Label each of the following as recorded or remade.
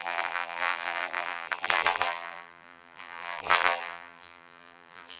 remade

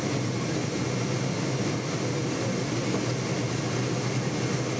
recorded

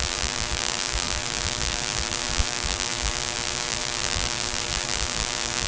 remade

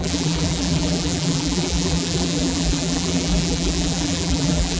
remade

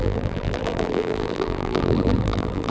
remade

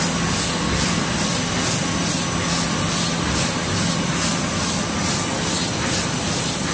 recorded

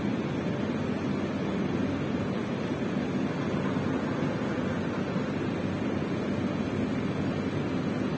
recorded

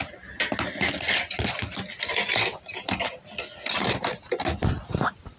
recorded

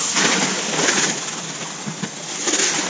recorded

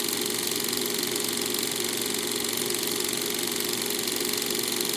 recorded